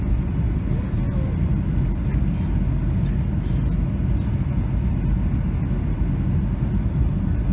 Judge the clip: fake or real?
real